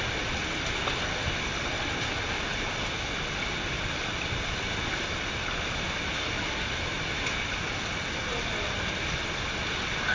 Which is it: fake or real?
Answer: real